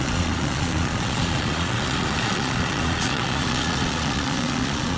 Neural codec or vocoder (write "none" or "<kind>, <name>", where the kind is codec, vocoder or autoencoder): vocoder, Vocos